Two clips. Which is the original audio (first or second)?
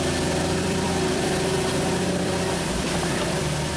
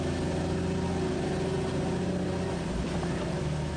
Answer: second